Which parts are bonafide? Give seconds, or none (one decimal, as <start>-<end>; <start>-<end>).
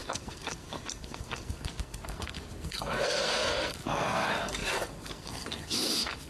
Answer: none